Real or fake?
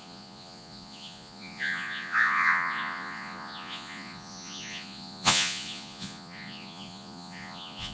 fake